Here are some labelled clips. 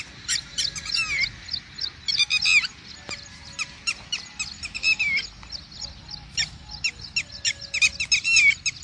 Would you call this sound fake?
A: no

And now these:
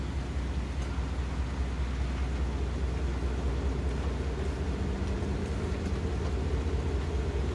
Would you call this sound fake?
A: no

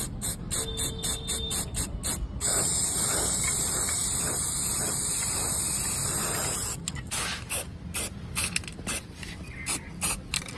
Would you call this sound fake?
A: no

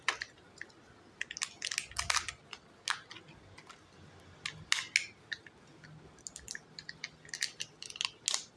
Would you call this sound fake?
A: no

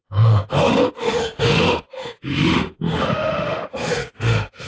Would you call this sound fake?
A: yes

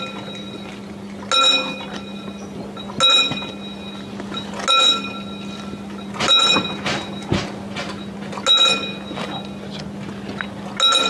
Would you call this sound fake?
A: no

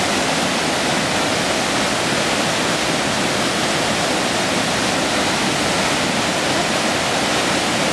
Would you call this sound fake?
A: no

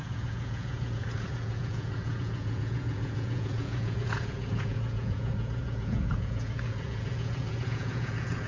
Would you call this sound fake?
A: yes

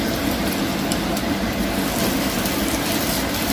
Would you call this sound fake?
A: no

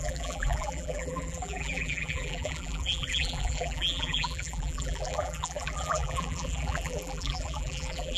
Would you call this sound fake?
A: yes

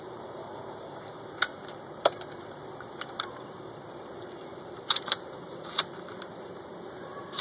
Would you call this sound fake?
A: yes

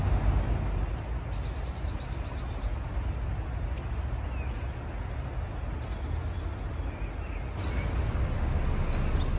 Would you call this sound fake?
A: no